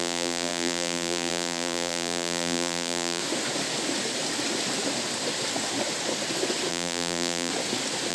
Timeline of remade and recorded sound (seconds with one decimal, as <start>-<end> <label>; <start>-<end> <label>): 0.0-3.2 remade; 3.2-6.7 recorded; 6.7-7.5 remade; 7.5-8.1 recorded